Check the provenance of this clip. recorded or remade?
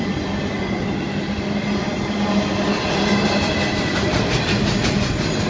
recorded